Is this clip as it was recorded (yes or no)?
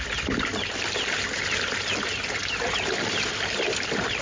yes